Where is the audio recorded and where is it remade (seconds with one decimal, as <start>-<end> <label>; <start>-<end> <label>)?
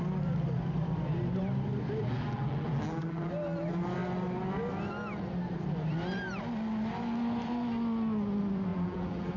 0.0-2.0 recorded; 2.0-3.3 remade; 3.3-8.7 recorded; 8.7-9.4 remade